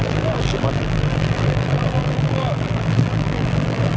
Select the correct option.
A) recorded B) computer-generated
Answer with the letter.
B